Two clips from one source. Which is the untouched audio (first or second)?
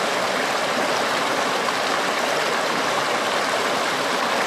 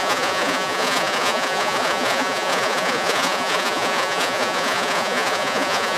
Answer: first